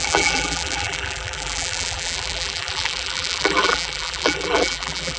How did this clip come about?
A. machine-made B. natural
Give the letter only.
A